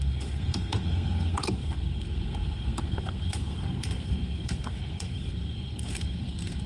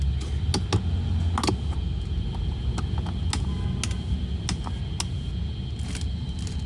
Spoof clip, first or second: first